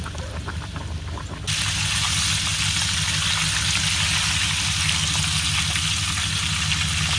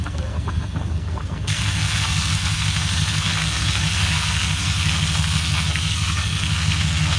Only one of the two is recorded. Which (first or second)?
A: first